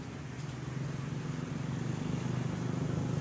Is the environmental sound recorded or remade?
recorded